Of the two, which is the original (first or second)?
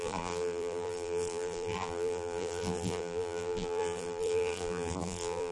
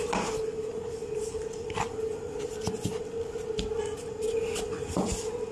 second